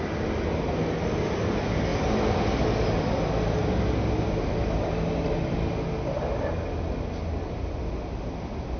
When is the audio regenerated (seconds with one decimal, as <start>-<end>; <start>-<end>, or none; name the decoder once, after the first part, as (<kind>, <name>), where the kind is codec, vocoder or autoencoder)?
none